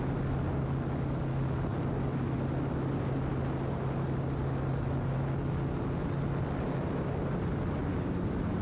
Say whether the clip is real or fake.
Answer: real